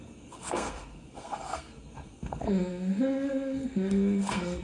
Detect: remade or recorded remade